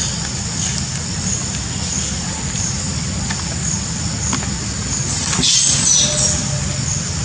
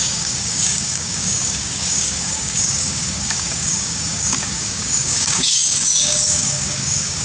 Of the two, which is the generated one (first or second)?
second